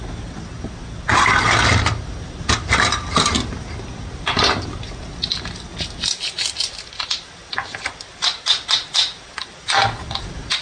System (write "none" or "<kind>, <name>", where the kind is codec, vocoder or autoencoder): none